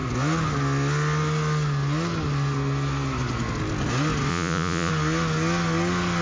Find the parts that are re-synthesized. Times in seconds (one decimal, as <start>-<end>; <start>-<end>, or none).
4.3-4.9